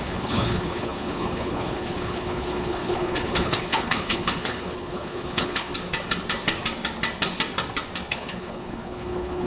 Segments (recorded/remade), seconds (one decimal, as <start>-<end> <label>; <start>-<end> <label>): 0.0-5.7 remade; 5.7-8.1 recorded; 8.1-9.5 remade

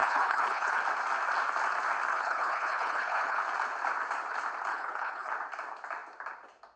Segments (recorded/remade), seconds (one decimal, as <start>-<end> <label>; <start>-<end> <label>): 0.0-0.8 remade; 0.8-2.1 recorded; 2.1-3.4 remade; 3.4-4.7 recorded; 4.7-5.3 remade; 5.3-6.8 recorded

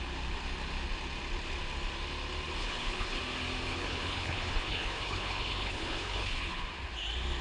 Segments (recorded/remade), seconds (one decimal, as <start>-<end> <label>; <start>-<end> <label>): 0.0-2.6 recorded; 2.6-3.2 remade; 3.2-3.7 recorded; 3.7-6.6 remade; 6.6-7.4 recorded

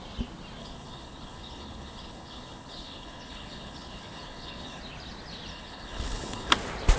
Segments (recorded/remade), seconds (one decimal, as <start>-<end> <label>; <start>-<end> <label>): 0.0-0.6 recorded; 0.6-4.8 remade; 4.8-5.5 recorded; 5.5-6.5 remade; 6.5-7.0 recorded

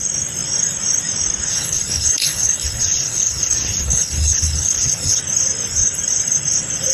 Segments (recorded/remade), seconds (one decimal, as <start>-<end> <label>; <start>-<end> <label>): 0.0-1.5 recorded; 1.5-5.2 remade; 5.2-6.9 recorded